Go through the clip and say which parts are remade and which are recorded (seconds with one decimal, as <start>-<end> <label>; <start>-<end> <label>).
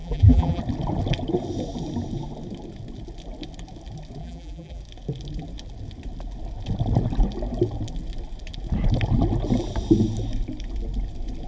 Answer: 0.0-0.6 remade; 0.6-4.2 recorded; 4.2-4.8 remade; 4.8-11.5 recorded